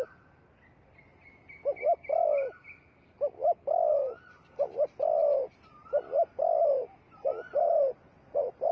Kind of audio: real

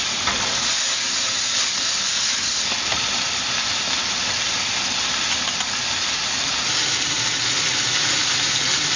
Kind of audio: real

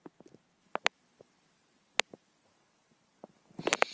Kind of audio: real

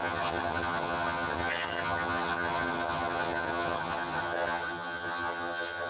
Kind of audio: fake